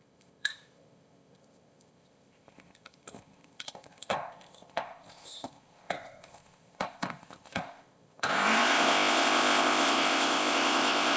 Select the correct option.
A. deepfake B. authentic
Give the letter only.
A